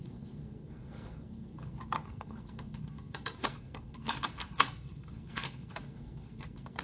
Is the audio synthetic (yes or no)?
yes